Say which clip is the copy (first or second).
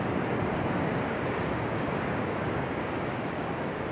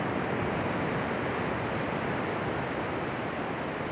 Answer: first